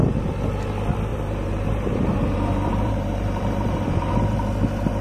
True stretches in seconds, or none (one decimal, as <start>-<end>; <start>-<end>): 0.0-1.1; 4.1-5.0